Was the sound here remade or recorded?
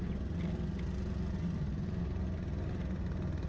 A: recorded